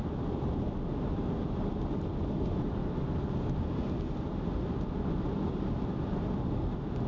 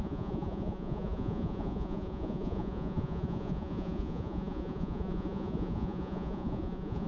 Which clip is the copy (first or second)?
second